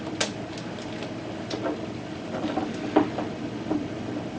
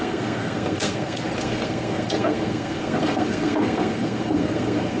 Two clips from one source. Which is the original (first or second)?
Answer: first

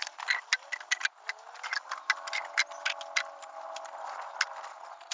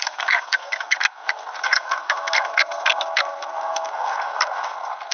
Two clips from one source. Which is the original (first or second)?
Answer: first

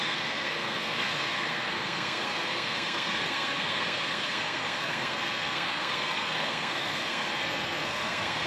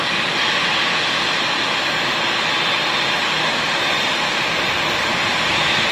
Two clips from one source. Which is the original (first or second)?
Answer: second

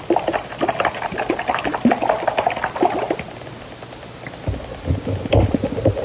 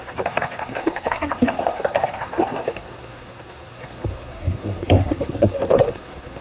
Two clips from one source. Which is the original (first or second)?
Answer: first